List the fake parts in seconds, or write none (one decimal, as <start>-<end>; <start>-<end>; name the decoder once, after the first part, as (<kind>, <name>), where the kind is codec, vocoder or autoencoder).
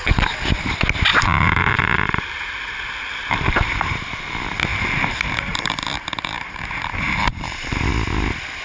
1.1-3.9 (vocoder, BigVGAN v2); 4.7-7.6